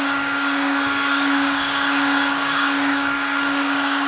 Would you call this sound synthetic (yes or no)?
yes